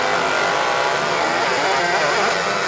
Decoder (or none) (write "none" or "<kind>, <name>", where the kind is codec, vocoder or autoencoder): none